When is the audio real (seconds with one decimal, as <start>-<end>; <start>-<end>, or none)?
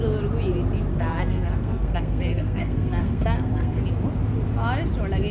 0.0-0.9; 3.8-5.3